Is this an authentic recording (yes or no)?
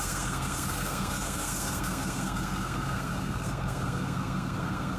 no